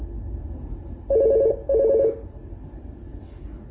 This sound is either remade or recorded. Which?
recorded